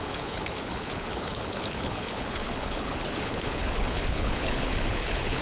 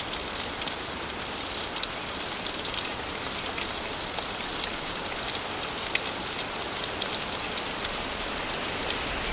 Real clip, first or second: second